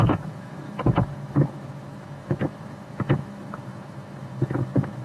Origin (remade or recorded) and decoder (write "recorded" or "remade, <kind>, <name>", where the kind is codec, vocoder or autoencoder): remade, autoencoder, DAC-VAE